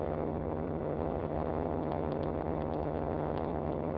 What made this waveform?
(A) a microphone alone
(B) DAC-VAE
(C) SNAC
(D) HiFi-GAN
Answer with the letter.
D